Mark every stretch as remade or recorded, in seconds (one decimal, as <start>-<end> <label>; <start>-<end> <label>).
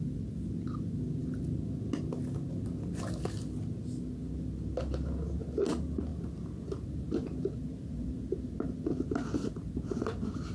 0.0-10.5 recorded